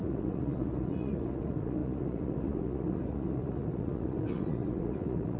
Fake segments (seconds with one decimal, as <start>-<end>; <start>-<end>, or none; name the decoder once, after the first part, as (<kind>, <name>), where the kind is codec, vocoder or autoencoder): 0.0-5.4 (vocoder, Vocos)